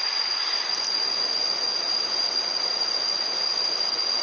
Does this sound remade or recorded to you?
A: recorded